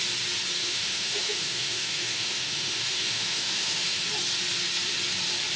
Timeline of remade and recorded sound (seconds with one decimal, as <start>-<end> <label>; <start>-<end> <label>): 0.0-0.6 recorded; 0.6-4.0 remade; 4.0-5.6 recorded